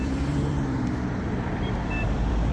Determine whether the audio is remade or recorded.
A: remade